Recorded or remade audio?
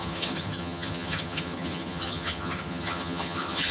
remade